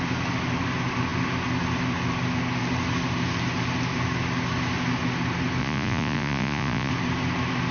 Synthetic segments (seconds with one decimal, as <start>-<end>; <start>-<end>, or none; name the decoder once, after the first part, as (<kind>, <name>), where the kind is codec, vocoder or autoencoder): 5.6-6.9 (vocoder, Vocos)